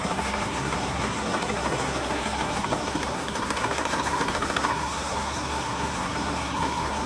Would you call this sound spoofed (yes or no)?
yes